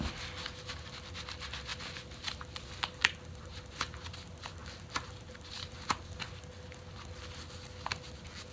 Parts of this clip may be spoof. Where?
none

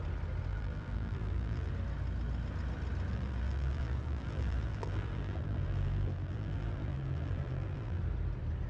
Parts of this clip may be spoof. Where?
0.5-1.7 (vocoder, BigVGAN v2); 3.1-8.0

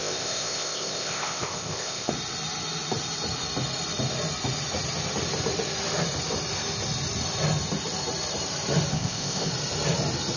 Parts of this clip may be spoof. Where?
0.0-2.1 (codec, ZipCodec); 8.9-9.5

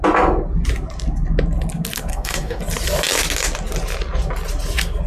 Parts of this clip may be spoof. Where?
2.1-2.6 (codec, DAC)

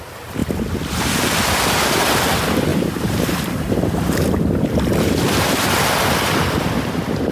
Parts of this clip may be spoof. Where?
2.7-4.3 (vocoder, BigVGAN v2)

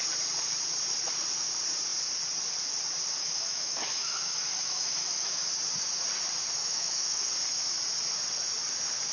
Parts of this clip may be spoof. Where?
3.2-5.4 (autoencoder, DAC-VAE); 6.6-7.3

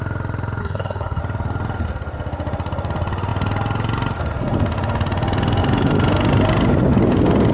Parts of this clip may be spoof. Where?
0.6-1.2 (codec, SNAC)

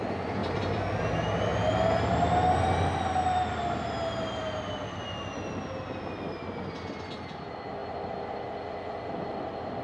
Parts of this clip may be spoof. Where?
none